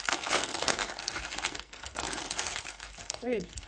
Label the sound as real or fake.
fake